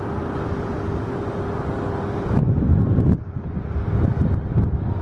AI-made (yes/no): no